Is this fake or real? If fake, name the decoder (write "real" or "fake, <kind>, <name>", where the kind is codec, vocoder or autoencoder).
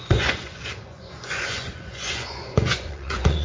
fake, vocoder, Vocos